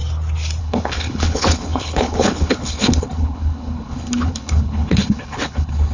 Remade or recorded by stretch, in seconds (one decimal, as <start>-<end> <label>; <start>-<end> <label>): 0.0-0.6 recorded; 0.6-5.9 remade